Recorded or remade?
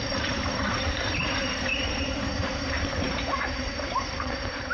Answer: remade